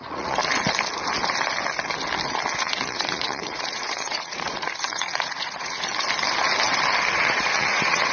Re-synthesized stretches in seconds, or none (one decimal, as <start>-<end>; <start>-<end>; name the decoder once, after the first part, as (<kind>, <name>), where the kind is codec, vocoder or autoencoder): 0.0-0.4 (vocoder, Vocos); 2.6-5.9; 7.1-8.1